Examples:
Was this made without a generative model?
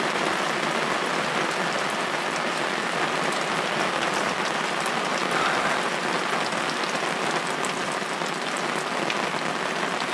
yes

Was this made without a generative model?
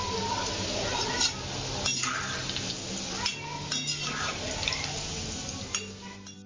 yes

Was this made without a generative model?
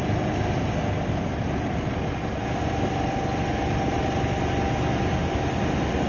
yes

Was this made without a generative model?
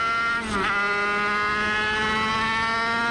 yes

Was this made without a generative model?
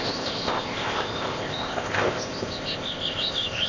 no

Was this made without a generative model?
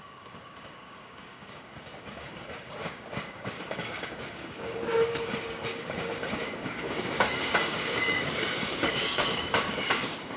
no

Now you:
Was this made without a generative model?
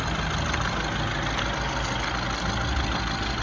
yes